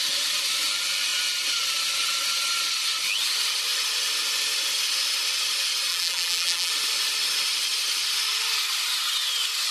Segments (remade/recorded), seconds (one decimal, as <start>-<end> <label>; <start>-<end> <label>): 0.0-5.9 recorded; 5.9-6.7 remade; 6.7-9.7 recorded